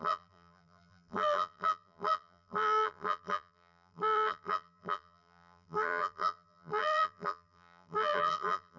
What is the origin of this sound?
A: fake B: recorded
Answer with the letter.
A